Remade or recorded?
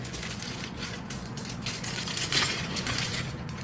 remade